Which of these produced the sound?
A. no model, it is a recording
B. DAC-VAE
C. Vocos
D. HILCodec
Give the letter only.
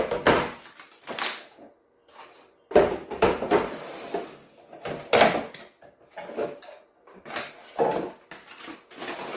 A